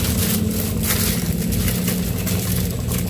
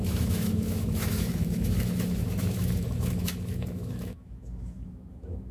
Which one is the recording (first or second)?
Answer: first